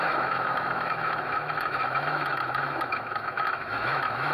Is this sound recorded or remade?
remade